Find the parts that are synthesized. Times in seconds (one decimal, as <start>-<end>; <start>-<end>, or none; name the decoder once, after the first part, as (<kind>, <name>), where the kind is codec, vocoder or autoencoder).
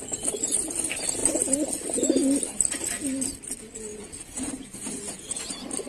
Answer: 3.9-5.4 (vocoder, Vocos)